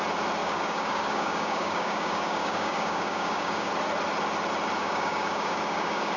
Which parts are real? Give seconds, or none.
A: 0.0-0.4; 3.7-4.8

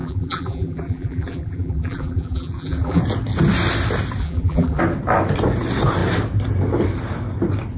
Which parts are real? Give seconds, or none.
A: 3.0-4.2; 4.8-7.8

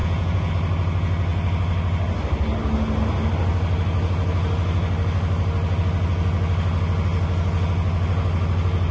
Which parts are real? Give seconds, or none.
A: 0.5-8.9

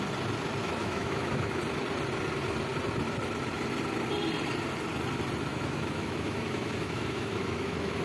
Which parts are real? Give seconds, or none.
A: 0.0-0.8; 1.6-5.5

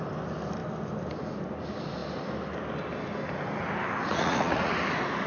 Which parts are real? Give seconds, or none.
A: 0.0-4.1; 4.7-5.3